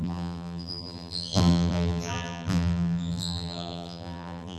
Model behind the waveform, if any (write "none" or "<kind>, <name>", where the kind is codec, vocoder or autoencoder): vocoder, BigVGAN v2